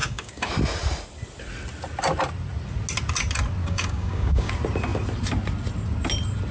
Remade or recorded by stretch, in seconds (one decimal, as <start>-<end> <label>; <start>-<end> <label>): 0.0-0.5 remade; 0.5-3.6 recorded; 3.6-4.5 remade; 4.5-6.5 recorded